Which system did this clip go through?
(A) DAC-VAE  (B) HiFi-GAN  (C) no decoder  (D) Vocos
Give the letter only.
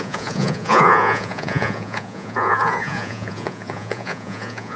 D